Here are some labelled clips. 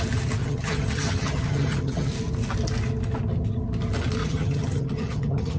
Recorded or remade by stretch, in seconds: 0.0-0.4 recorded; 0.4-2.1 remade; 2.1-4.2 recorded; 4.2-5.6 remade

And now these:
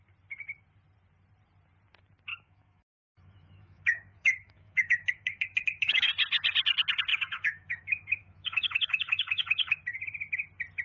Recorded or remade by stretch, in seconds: 0.0-2.3 recorded; 2.3-6.1 remade; 6.1-7.1 recorded; 7.1-9.8 remade; 9.8-10.8 recorded

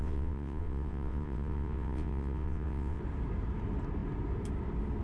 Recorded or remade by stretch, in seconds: 0.0-3.0 remade; 3.0-5.0 recorded

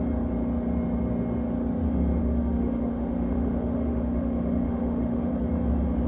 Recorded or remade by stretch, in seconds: 0.0-2.2 recorded; 2.2-5.3 remade; 5.3-6.1 recorded